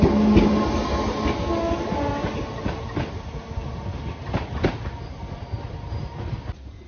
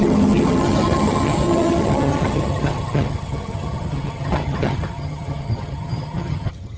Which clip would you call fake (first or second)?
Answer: second